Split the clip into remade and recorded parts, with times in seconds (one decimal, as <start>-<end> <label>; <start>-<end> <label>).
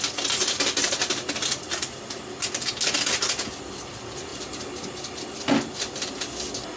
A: 0.0-6.8 recorded